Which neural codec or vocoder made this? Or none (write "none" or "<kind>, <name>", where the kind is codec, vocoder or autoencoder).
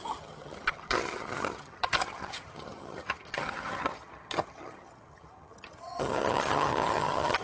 vocoder, HiFi-GAN